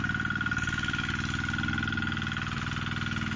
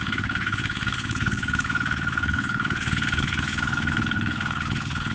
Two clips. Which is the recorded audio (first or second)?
first